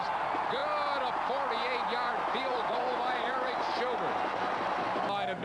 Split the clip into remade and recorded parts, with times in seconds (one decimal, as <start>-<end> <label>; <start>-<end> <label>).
0.0-2.5 recorded; 2.5-3.8 remade; 3.8-5.4 recorded